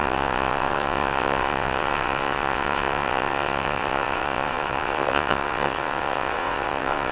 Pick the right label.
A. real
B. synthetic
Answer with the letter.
B